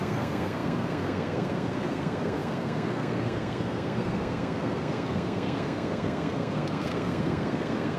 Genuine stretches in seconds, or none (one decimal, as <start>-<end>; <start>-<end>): none